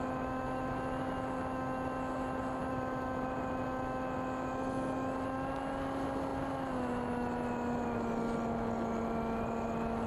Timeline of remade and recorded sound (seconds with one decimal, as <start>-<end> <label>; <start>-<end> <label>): 0.0-2.6 recorded; 2.6-3.6 remade; 3.6-10.1 recorded